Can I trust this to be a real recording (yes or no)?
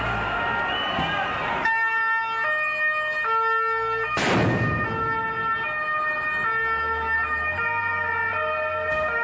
yes